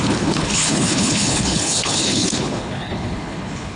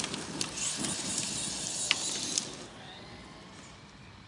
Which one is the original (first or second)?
second